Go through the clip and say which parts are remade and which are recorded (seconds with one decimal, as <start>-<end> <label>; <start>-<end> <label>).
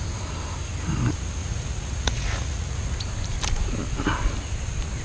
0.0-1.4 recorded; 1.4-3.0 remade; 3.0-5.0 recorded